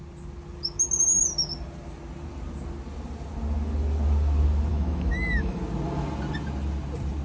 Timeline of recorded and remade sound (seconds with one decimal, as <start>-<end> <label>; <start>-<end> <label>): 0.0-4.7 recorded; 4.7-5.6 remade; 5.6-7.2 recorded